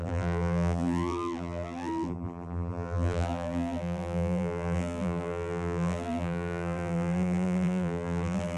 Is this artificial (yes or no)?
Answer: yes